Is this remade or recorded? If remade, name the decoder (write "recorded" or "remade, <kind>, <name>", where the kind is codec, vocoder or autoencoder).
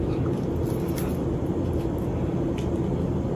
recorded